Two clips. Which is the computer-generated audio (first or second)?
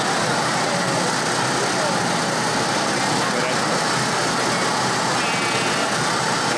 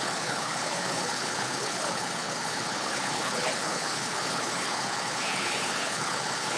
second